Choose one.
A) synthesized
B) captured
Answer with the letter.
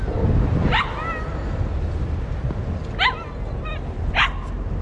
B